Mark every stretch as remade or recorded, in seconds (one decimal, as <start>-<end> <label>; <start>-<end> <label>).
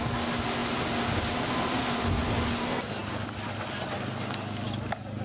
0.0-5.2 recorded